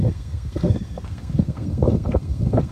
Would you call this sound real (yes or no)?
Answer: no